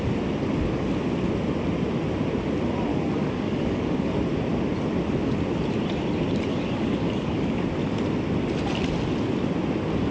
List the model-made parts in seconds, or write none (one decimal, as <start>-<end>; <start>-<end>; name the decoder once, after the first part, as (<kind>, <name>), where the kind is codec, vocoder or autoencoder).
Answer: 2.9-4.1 (codec, DAC); 6.5-7.6